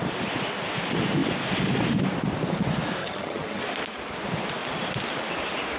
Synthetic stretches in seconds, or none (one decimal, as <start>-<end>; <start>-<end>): 3.0-3.6